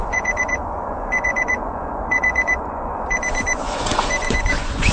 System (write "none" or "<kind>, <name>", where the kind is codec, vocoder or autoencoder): vocoder, Vocos